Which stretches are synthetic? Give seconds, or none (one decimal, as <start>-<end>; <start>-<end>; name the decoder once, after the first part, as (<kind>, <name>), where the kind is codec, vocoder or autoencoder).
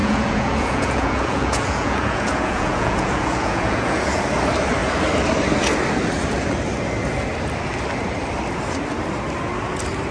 0.0-4.2 (vocoder, Vocos)